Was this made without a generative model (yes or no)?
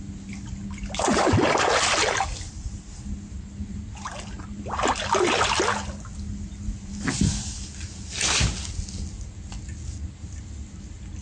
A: yes